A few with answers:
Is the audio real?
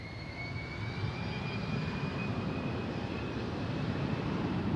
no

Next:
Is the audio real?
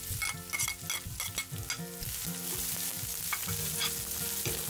yes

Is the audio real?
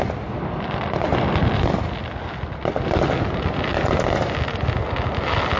yes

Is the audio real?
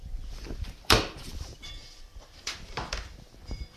no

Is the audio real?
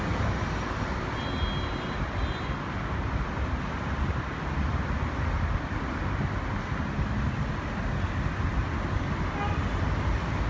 yes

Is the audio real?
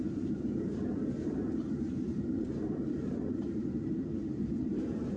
no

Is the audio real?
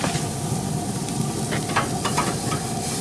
yes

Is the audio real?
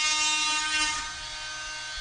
yes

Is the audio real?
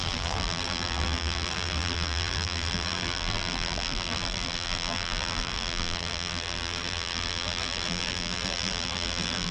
no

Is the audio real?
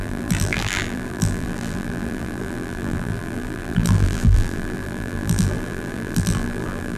no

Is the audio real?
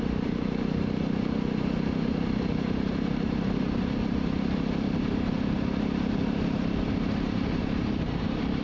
no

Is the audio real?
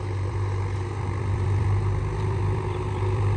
no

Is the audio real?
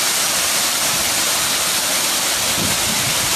no